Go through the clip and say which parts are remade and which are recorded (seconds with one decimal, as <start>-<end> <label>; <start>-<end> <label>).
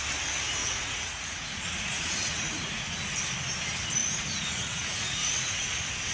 0.0-0.6 recorded; 0.6-3.0 remade; 3.0-4.0 recorded; 4.0-5.6 remade; 5.6-6.1 recorded